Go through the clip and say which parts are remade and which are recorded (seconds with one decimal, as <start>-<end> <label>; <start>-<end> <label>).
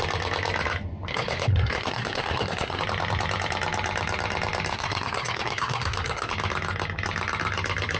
0.0-1.1 recorded; 1.1-2.8 remade; 2.8-4.7 recorded; 4.7-6.3 remade; 6.3-8.0 recorded